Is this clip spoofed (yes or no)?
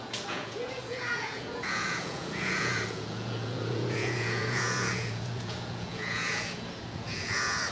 yes